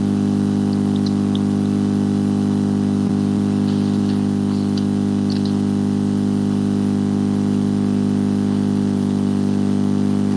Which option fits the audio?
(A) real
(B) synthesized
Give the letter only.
A